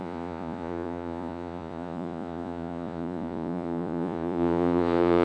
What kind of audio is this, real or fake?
fake